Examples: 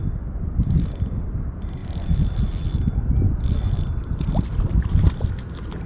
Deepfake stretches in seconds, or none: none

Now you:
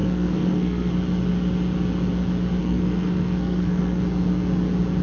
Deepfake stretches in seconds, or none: 0.0-0.9; 2.6-4.0

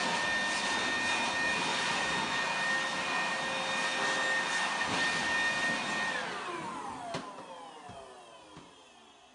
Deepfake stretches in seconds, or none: 1.7-2.5